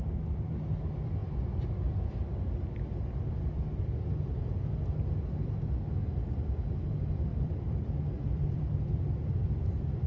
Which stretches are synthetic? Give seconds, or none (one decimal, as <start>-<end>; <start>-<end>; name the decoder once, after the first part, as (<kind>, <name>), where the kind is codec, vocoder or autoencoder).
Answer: 7.3-9.7 (vocoder, BigVGAN v2)